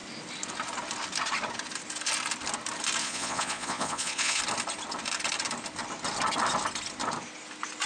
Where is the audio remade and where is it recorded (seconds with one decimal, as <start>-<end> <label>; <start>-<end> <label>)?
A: 0.0-3.0 recorded; 3.0-4.4 remade; 4.4-7.9 recorded